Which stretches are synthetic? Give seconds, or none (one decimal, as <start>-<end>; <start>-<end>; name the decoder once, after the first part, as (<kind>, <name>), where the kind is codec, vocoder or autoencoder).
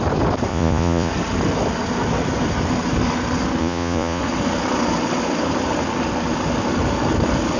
0.5-1.1 (vocoder, Vocos); 3.6-4.2